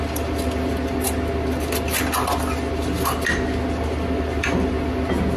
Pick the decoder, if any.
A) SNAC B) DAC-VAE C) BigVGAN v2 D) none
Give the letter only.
D